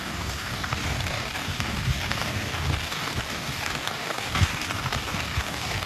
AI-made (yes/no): yes